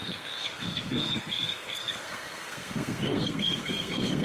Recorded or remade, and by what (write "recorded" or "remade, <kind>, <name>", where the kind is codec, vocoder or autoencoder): remade, codec, SNAC